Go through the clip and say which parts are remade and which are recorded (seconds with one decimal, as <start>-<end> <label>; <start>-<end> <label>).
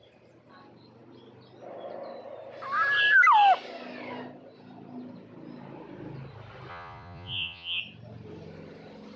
0.0-6.7 recorded; 6.7-7.8 remade; 7.8-9.2 recorded